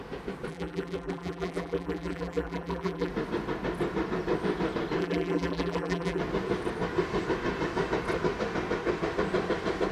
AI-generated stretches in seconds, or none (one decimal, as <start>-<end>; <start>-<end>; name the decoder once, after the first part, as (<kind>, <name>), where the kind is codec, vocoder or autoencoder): 0.5-3.1 (vocoder, BigVGAN v2); 5.0-6.2